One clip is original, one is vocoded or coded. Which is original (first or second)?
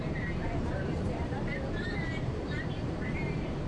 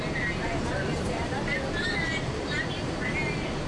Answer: second